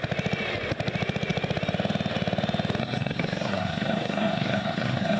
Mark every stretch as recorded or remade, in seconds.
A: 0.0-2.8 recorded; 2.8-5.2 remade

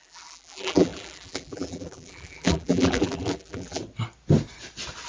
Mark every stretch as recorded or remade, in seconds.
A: 0.0-3.8 remade; 3.8-5.1 recorded

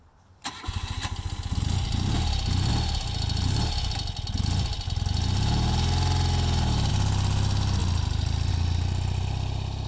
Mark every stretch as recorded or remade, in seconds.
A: 0.0-9.9 recorded

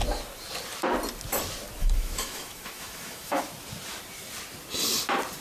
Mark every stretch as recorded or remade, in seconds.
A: 0.0-1.8 recorded; 1.8-3.4 remade; 3.4-5.4 recorded

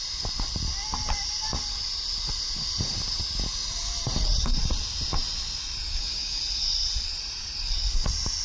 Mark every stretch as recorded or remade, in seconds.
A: 0.0-5.9 recorded; 5.9-6.4 remade; 6.4-8.4 recorded